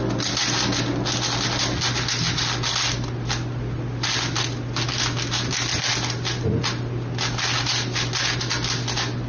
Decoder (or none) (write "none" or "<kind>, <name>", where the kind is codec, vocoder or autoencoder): none